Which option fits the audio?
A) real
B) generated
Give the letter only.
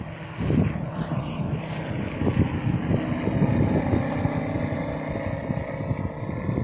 A